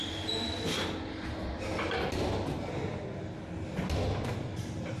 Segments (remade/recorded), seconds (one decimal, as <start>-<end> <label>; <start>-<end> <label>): 0.0-5.0 recorded